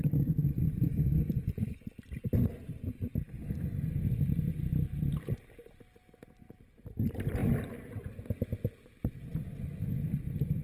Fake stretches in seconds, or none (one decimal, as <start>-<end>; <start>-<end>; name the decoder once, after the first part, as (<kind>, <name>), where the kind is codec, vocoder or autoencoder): 0.0-3.4 (vocoder, BigVGAN v2); 6.2-10.6